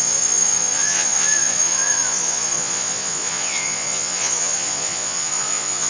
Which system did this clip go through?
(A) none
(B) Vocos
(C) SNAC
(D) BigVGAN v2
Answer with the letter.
B